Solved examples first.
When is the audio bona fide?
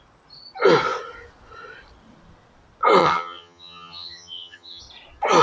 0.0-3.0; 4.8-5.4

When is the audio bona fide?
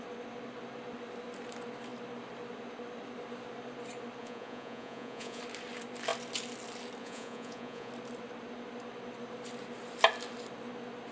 0.0-4.2; 5.4-7.0; 7.9-11.1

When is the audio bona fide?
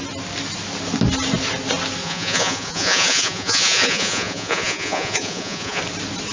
0.0-2.0; 5.8-6.3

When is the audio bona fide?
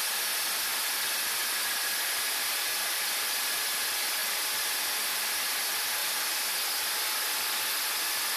0.0-8.4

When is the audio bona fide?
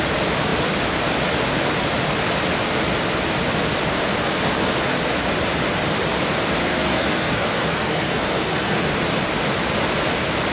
0.0-6.6; 8.9-10.5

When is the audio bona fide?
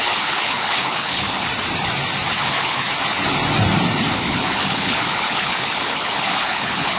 1.5-2.4; 2.8-4.1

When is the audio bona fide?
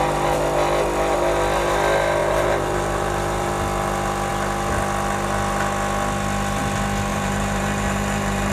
0.0-2.2; 3.5-7.1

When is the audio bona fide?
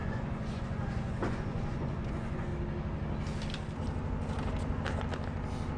2.5-5.8